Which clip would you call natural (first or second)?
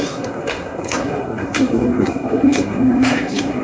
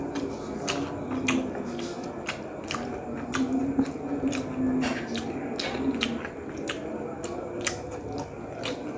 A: second